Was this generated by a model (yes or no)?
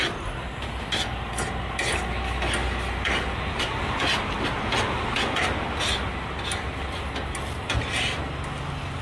no